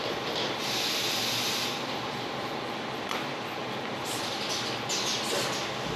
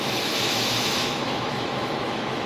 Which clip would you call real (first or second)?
first